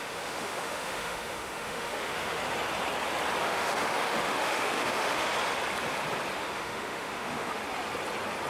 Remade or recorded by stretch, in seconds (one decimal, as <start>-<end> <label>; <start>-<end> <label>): 0.0-2.4 remade; 2.4-3.4 recorded; 3.4-5.3 remade; 5.3-6.4 recorded; 6.4-7.6 remade; 7.6-8.5 recorded

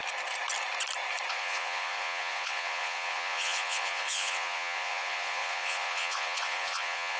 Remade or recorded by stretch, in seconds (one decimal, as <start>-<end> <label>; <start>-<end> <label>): 0.0-1.3 recorded; 1.3-7.2 remade